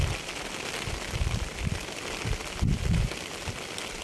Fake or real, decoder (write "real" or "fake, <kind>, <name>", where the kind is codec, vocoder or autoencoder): real